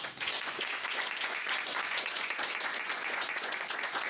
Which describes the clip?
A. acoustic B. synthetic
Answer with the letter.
B